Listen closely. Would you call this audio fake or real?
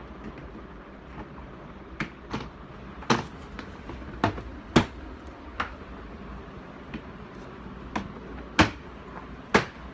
real